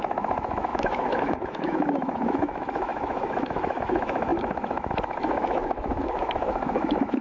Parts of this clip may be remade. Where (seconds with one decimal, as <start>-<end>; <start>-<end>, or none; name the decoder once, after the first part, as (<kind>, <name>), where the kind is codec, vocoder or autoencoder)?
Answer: 0.0-7.2 (autoencoder, DAC-VAE)